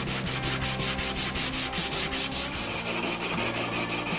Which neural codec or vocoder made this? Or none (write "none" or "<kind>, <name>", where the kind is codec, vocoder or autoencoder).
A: none